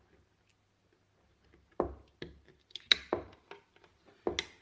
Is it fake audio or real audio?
real